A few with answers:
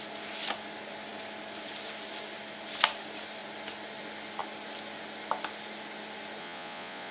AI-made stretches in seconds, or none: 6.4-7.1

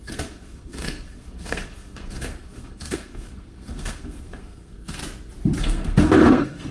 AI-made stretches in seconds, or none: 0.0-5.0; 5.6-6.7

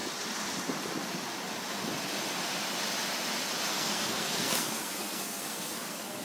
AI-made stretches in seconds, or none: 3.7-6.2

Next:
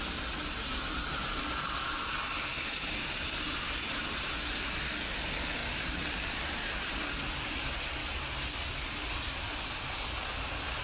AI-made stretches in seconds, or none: none

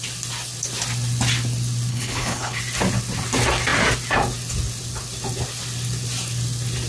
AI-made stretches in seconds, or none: 1.9-2.6

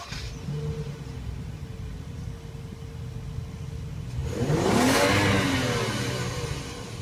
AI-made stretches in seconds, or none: none

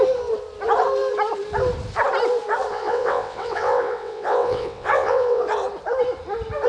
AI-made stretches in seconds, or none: 2.7-5.4